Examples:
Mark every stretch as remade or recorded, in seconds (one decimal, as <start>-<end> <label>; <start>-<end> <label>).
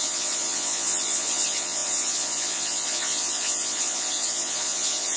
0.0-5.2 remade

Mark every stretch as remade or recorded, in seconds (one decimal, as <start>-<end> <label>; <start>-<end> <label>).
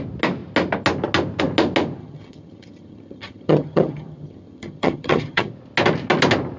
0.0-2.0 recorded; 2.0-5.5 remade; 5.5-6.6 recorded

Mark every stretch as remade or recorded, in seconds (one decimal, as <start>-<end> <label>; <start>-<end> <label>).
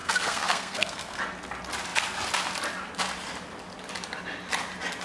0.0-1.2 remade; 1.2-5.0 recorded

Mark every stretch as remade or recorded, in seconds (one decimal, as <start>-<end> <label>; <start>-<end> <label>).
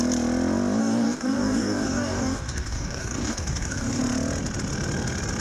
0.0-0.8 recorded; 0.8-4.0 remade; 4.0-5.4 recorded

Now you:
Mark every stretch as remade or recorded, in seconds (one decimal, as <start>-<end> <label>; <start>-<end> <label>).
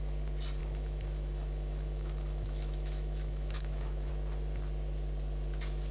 0.0-0.6 recorded; 0.6-4.1 remade; 4.1-5.9 recorded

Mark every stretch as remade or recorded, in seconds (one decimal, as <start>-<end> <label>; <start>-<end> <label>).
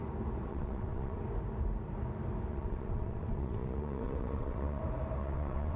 0.0-0.5 recorded; 0.5-1.2 remade; 1.2-2.5 recorded; 2.5-4.8 remade; 4.8-5.2 recorded; 5.2-5.8 remade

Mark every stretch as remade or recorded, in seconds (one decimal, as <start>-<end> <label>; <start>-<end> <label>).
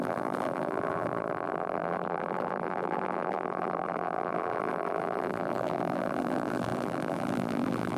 0.0-8.0 remade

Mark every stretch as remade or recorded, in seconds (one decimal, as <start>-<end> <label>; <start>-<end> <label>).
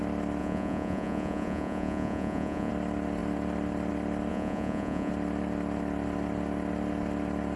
0.0-0.4 recorded; 0.4-2.7 remade; 2.7-4.3 recorded; 4.3-5.1 remade; 5.1-7.6 recorded